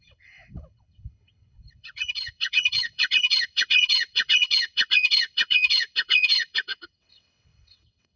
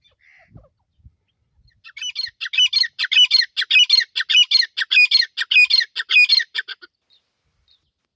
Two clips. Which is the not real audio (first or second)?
first